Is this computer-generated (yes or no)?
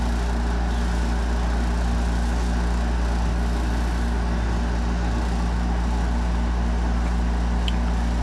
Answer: no